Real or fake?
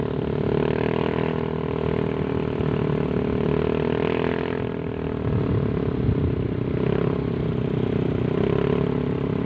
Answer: real